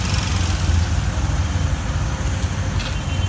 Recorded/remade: recorded